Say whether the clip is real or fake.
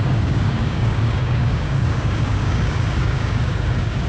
fake